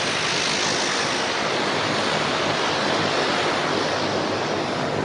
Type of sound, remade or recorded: recorded